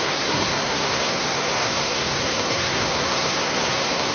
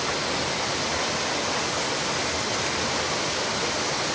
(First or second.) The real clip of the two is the second